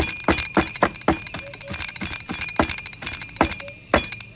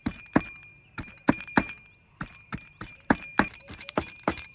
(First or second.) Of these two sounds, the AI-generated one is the second